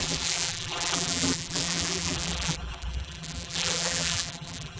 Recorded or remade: remade